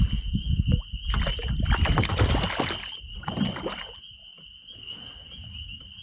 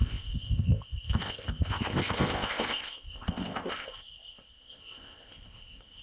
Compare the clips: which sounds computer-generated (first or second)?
second